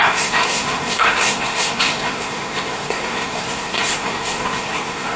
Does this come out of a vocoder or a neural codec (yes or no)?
yes